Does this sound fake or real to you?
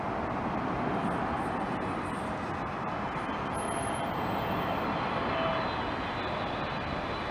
real